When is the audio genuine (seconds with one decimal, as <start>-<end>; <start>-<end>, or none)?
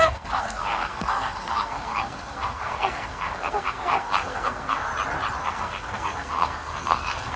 4.9-5.4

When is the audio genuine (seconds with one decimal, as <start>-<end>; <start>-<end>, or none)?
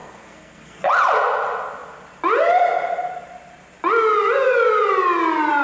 0.9-5.6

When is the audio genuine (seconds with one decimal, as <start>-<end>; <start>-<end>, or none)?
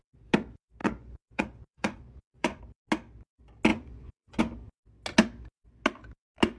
0.0-0.8; 2.6-3.7; 4.4-6.6